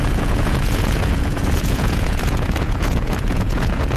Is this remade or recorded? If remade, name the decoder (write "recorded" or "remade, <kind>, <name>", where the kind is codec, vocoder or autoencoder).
remade, vocoder, Vocos